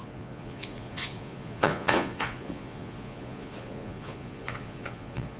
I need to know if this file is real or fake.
fake